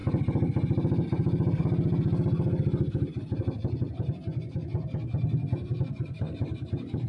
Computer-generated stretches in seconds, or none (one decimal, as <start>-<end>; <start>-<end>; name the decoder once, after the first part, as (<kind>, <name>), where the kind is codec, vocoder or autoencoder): none